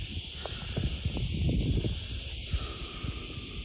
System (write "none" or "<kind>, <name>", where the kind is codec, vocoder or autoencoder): none